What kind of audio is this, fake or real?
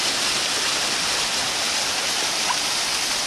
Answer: real